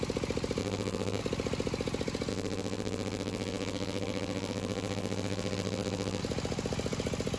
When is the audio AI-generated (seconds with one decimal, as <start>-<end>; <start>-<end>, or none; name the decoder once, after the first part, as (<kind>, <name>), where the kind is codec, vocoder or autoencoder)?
0.6-1.2 (vocoder, BigVGAN v2); 2.3-6.2